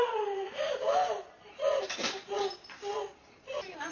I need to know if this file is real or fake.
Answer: fake